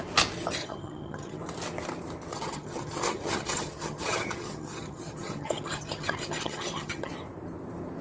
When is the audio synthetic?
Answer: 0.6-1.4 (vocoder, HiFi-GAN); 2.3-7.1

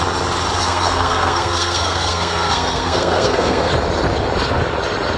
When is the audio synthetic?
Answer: 0.6-3.7 (codec, SNAC)

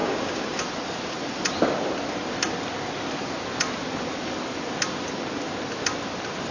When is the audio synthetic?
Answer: 0.0-0.6 (codec, DAC)

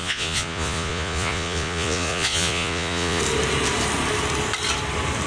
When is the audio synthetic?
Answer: 0.0-3.2 (vocoder, Vocos)

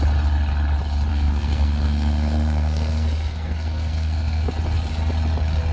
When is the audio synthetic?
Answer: 1.1-4.5 (codec, SNAC)

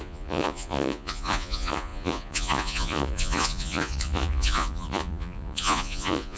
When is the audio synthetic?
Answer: 0.0-6.4 (vocoder, Vocos)

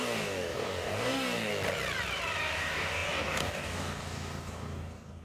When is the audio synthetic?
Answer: 0.0-1.5 (codec, DAC); 2.4-5.2

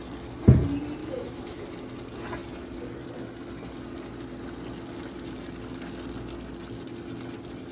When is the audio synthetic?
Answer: 1.0-1.6 (autoencoder, DAC-VAE)